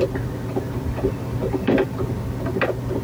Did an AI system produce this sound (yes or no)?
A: no